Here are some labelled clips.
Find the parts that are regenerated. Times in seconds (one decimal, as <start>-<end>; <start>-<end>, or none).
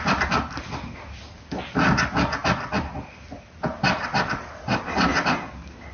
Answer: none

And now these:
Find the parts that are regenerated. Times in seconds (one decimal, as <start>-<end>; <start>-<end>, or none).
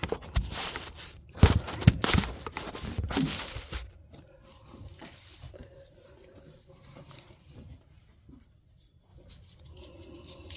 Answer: 0.0-10.6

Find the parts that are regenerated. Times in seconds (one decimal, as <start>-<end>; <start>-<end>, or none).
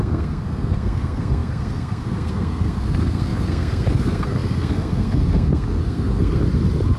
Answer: 0.0-6.4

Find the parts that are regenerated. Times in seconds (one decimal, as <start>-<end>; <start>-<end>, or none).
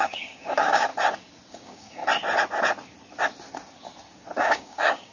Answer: 0.0-0.9; 1.5-2.0; 4.4-5.1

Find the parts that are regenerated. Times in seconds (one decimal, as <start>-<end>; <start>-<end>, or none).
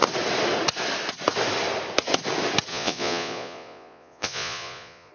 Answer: 2.7-5.1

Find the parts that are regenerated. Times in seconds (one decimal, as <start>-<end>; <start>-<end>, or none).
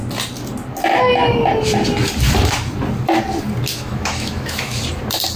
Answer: 3.7-4.8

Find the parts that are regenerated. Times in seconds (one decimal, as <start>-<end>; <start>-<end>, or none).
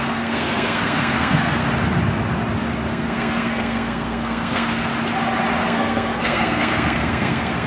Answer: 0.0-1.6; 2.9-4.9; 5.6-7.7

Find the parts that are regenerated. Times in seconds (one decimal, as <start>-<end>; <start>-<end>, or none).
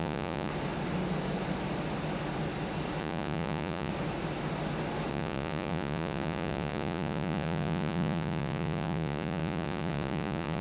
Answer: 0.0-0.5; 3.0-3.9; 5.1-10.6